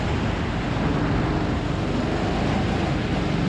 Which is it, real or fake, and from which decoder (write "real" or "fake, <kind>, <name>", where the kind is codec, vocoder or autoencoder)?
real